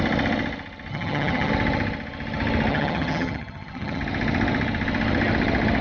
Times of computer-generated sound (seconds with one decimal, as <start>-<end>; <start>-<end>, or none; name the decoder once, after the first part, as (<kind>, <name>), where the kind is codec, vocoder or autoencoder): 0.9-1.5 (vocoder, HiFi-GAN); 2.7-4.0